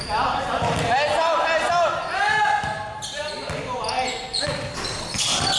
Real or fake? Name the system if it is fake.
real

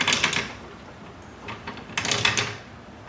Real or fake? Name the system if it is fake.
real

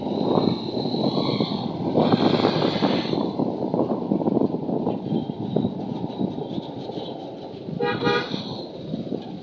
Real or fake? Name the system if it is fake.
real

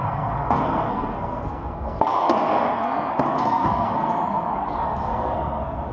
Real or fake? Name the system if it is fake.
fake, codec, SNAC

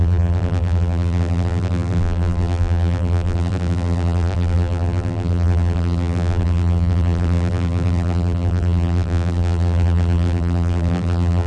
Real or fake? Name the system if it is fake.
fake, vocoder, BigVGAN v2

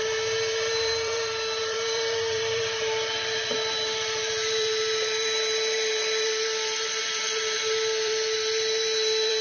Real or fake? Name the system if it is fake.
fake, vocoder, BigVGAN v2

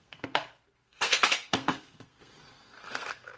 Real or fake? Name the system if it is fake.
fake, codec, SNAC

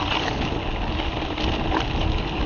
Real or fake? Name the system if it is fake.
real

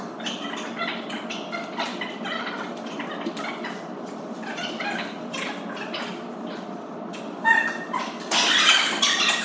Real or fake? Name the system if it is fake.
fake, vocoder, BigVGAN v2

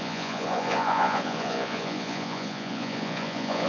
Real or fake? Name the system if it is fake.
fake, vocoder, Vocos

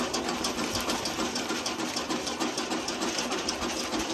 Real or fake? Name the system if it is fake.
real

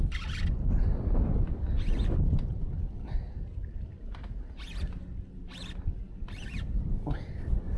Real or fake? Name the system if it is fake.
real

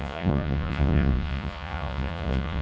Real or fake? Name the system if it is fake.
fake, vocoder, Vocos